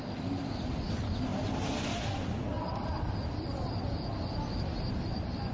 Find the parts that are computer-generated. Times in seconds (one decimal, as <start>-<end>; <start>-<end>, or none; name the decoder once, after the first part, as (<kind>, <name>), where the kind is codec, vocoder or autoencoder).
none